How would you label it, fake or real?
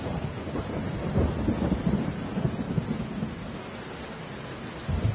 real